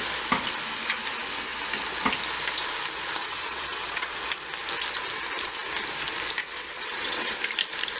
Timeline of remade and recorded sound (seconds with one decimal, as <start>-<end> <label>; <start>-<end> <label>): 0.0-3.2 recorded; 3.2-4.2 remade; 4.2-6.4 recorded; 6.4-7.3 remade; 7.3-8.0 recorded